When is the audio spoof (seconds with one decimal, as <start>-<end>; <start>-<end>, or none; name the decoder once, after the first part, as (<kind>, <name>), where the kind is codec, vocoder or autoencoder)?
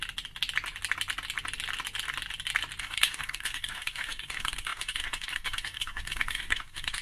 2.8-7.0 (codec, DAC)